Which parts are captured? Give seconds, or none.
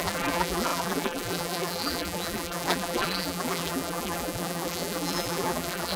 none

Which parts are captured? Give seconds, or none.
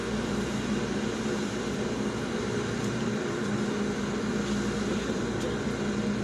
3.7-4.9; 5.4-6.2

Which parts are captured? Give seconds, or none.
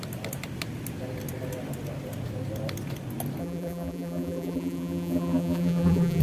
0.0-3.4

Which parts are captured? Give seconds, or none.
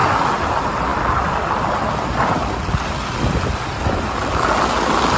0.0-0.5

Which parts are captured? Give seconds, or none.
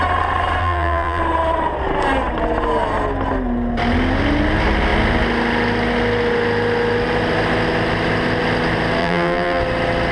0.0-0.6; 1.2-9.0; 9.6-10.1